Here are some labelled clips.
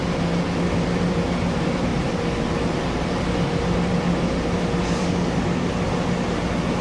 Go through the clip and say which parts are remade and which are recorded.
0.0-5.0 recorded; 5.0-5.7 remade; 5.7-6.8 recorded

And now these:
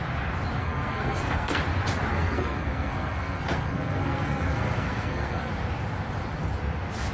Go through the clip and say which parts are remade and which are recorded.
0.0-0.6 recorded; 0.6-1.6 remade; 1.6-2.1 recorded; 2.1-5.5 remade; 5.5-7.1 recorded